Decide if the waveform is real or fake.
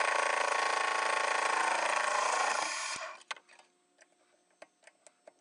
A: real